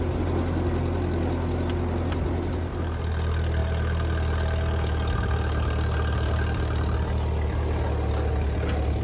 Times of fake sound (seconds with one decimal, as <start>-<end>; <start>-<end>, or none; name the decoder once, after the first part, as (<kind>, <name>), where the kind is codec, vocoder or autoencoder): none